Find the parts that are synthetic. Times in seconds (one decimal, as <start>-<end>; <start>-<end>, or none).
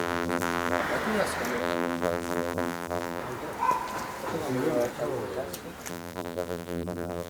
0.0-0.8; 1.6-3.2; 5.9-7.3